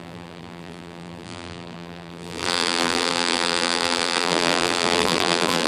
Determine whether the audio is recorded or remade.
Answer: remade